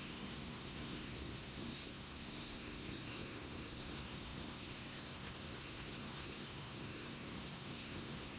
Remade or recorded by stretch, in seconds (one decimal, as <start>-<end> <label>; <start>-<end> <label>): 0.0-8.4 remade